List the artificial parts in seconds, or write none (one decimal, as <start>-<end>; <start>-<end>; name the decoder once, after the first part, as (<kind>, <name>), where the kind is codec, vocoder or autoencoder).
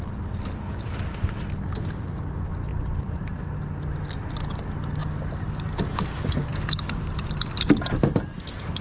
2.7-3.4 (vocoder, BigVGAN v2); 5.0-5.7; 6.5-7.7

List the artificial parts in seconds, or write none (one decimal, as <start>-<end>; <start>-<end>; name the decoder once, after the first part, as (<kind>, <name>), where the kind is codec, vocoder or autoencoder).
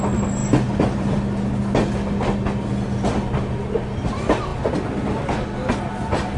none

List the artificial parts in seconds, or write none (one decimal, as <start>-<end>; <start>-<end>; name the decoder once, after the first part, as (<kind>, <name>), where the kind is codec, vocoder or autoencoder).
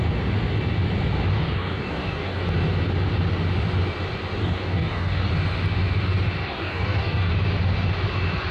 1.3-2.4 (codec, DAC); 4.4-5.3; 6.4-7.3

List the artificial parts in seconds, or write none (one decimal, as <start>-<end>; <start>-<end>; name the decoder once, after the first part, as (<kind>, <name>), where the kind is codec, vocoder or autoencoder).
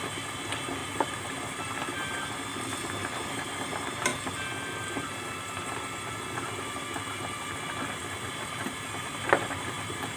0.8-2.1 (vocoder, BigVGAN v2)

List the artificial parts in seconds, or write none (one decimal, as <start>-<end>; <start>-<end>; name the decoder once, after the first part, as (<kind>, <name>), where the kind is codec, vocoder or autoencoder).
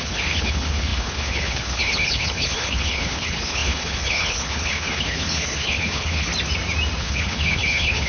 0.0-6.3 (codec, HILCodec); 7.0-8.1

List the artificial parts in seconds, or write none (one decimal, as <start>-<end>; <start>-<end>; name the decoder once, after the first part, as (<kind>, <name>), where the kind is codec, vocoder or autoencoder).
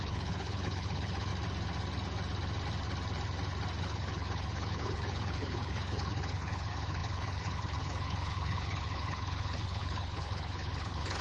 0.0-1.3 (codec, HILCodec); 3.8-11.2